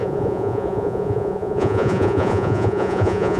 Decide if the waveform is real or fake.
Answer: fake